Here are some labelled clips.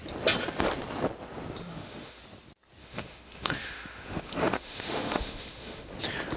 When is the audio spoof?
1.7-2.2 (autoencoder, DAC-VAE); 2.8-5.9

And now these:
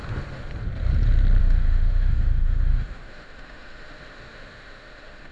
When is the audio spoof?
1.4-5.3 (autoencoder, DAC-VAE)

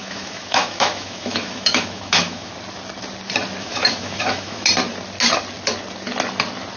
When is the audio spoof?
0.0-2.5 (autoencoder, DAC-VAE); 3.6-4.7

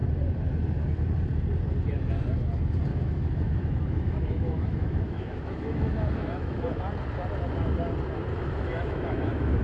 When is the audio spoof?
2.9-6.8 (autoencoder, DAC-VAE); 8.3-9.6

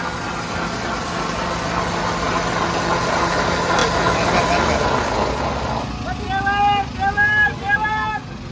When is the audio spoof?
none